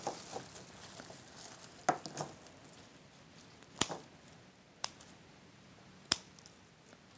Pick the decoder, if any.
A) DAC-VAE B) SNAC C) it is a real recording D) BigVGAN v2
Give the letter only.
C